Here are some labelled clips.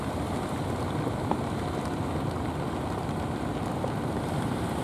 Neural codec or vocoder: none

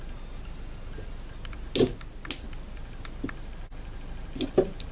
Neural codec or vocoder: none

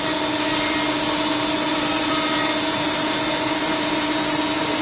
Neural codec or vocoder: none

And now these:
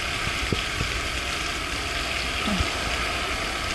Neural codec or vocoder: none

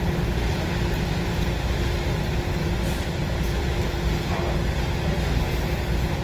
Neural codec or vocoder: none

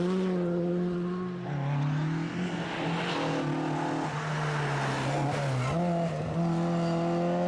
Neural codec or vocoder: none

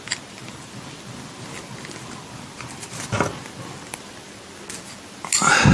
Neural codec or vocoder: none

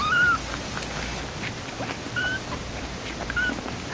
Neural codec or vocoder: none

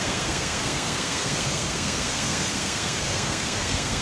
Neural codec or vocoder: codec, SNAC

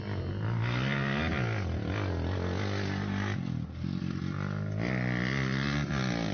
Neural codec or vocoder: none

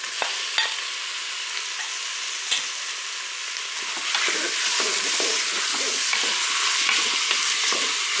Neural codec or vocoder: none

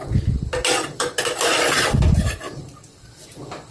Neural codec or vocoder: none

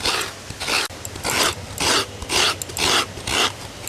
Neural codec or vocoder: none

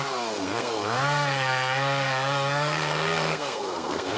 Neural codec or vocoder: codec, SNAC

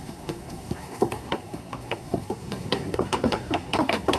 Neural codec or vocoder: codec, SNAC